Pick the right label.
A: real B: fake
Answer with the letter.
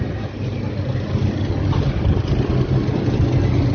A